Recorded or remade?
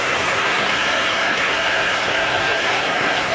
remade